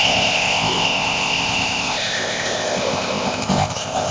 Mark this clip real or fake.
fake